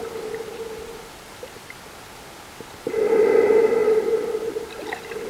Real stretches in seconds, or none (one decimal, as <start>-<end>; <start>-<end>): 0.0-3.8; 4.6-5.3